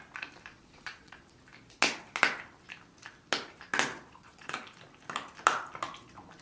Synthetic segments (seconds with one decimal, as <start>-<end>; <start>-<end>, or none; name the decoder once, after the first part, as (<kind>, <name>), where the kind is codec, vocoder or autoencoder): 0.5-1.4 (vocoder, Vocos); 3.9-4.6